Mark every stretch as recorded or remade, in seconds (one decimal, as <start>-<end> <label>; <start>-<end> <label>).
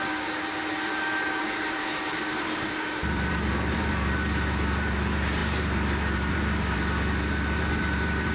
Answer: 0.0-8.3 remade